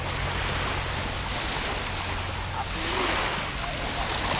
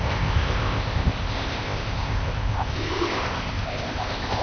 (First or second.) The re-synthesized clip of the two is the second